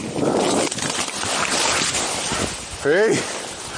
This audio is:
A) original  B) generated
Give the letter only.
A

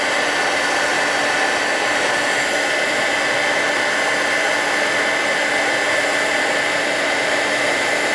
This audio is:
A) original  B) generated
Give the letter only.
A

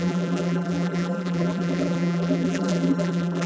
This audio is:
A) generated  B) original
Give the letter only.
A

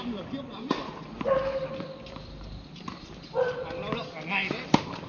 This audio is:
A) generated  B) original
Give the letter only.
A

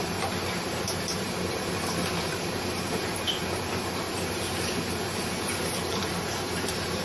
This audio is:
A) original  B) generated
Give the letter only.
B